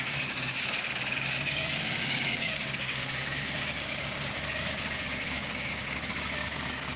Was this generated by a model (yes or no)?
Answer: yes